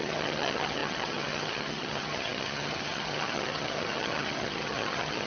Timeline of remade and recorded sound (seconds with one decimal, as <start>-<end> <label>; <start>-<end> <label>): 0.0-5.3 remade